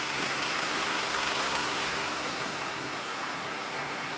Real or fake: fake